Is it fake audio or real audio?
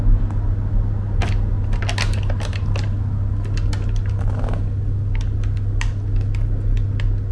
real